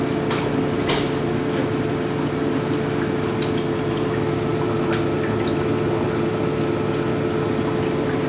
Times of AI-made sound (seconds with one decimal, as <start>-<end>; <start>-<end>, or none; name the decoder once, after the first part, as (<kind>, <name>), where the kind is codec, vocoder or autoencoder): none